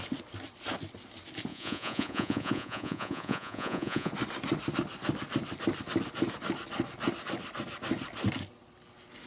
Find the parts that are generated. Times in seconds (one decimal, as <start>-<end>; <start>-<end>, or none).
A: 1.5-4.1